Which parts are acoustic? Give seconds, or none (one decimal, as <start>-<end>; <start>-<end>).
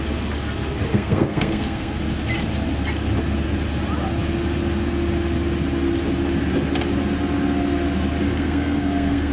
0.0-0.9; 2.0-8.3